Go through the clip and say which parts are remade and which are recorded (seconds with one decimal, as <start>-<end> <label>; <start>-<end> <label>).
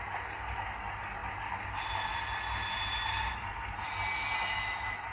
0.0-5.1 recorded